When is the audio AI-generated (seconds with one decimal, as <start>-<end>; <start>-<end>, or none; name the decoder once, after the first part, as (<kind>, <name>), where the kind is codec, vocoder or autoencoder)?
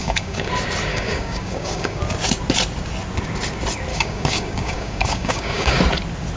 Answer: 0.0-0.5 (codec, DAC); 0.9-2.0; 3.9-5.8